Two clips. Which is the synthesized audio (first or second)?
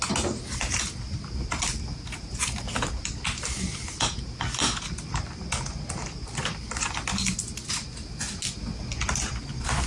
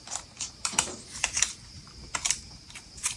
second